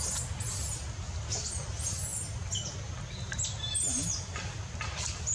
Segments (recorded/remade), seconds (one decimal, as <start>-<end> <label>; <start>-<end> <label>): 0.0-5.3 recorded